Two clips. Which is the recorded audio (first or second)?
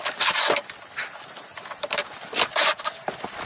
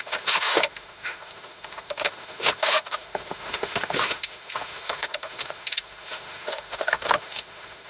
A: first